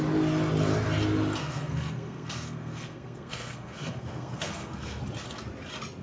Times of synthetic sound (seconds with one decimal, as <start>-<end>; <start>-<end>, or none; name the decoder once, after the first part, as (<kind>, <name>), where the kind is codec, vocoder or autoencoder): 1.4-5.0 (codec, SNAC)